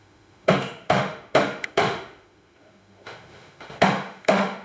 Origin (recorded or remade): remade